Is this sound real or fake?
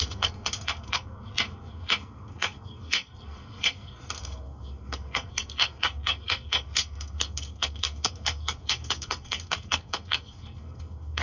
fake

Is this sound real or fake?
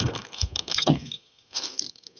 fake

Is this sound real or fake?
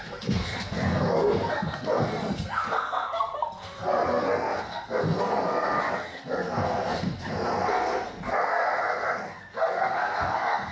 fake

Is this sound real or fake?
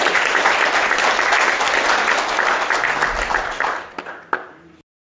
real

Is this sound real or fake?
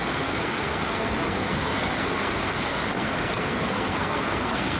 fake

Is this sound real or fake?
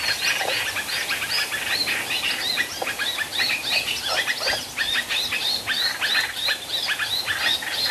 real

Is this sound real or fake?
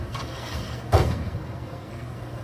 fake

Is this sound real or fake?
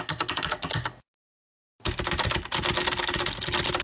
real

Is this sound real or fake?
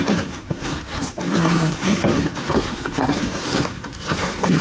fake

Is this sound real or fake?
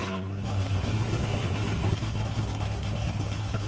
fake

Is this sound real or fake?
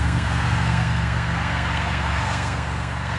fake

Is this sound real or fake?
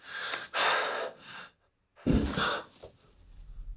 real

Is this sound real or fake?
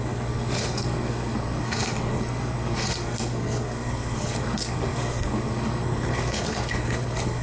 fake